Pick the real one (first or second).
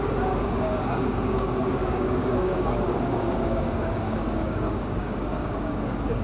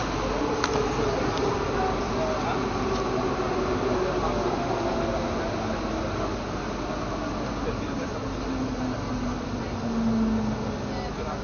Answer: second